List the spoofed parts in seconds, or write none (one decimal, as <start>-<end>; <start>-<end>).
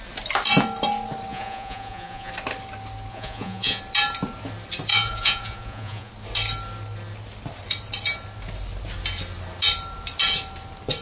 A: 1.3-2.3; 3.1-3.8; 4.9-6.1